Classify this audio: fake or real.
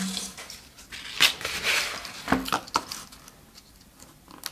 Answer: real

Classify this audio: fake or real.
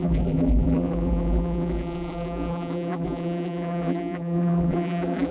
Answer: fake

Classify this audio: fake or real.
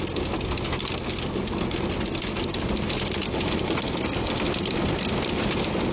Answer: real